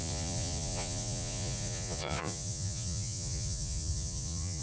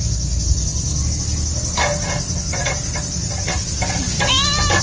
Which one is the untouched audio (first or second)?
second